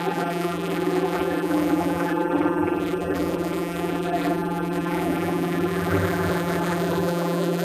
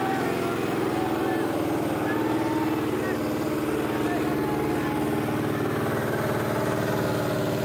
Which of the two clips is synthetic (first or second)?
first